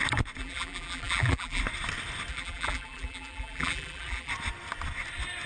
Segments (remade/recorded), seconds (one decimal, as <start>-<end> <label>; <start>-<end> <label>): 0.0-0.4 recorded; 0.4-1.6 remade; 1.6-2.3 recorded; 2.3-4.3 remade; 4.3-5.5 recorded